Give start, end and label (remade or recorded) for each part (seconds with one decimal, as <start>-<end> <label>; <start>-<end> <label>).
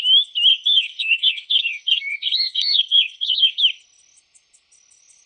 0.0-0.5 recorded; 0.5-3.6 remade; 3.6-5.3 recorded